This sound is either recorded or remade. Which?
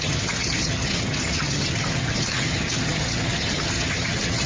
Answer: remade